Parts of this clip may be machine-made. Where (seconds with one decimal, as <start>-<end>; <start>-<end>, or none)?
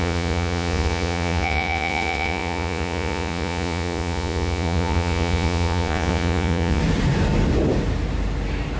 0.0-6.8